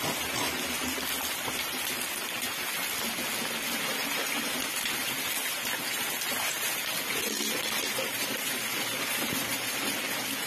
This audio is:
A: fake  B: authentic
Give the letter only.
B